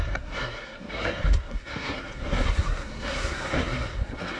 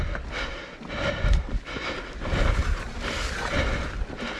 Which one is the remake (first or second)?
first